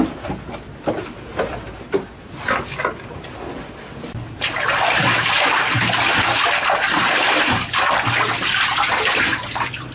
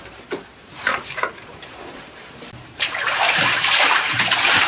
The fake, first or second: second